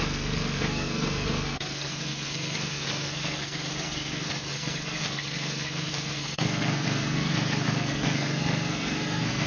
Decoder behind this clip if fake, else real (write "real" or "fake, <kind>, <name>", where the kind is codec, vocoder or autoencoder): fake, codec, SNAC